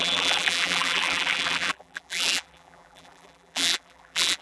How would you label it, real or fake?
fake